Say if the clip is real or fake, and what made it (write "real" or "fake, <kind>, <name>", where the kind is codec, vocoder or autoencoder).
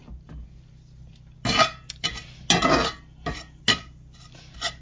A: real